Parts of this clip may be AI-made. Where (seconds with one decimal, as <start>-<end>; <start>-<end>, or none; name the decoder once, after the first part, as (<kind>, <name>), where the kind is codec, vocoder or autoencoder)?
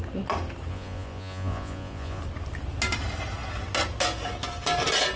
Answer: 0.7-2.2 (vocoder, Vocos)